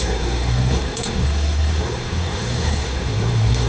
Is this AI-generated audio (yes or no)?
yes